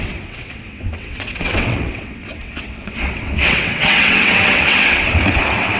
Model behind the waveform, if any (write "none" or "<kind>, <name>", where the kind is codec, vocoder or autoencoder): vocoder, WaveNeXt